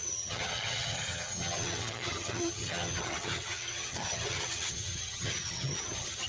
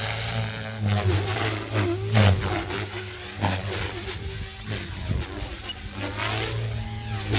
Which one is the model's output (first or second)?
first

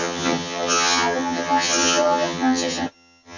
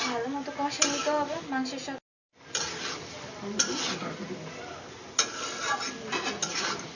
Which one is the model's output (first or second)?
first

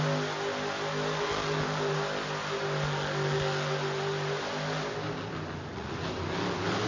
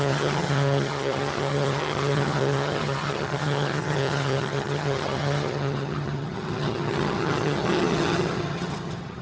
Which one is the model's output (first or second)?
second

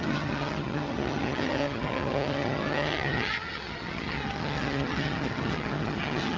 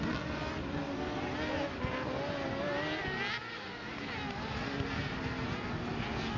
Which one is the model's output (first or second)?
first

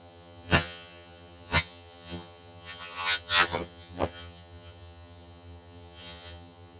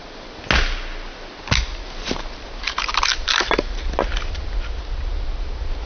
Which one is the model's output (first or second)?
first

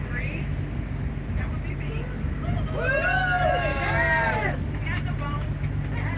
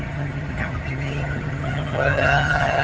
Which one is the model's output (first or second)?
second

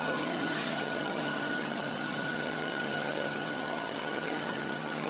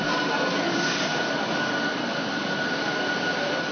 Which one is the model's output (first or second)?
first